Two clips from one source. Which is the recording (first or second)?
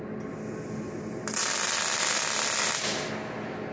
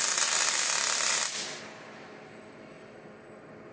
first